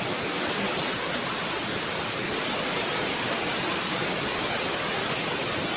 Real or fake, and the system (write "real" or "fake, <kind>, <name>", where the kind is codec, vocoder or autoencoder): real